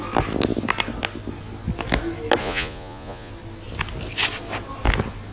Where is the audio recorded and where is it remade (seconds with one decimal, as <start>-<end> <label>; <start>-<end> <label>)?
0.0-2.4 recorded; 2.4-3.3 remade; 3.3-5.3 recorded